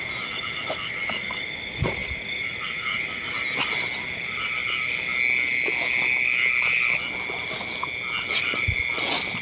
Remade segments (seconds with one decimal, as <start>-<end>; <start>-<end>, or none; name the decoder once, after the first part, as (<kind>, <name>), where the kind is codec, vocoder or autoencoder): none